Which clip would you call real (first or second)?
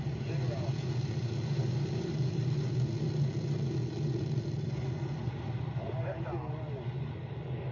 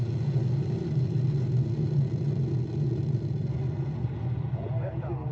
second